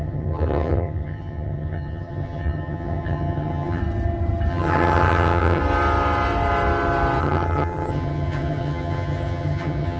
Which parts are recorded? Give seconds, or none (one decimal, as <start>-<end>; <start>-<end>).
3.8-4.5; 5.6-7.2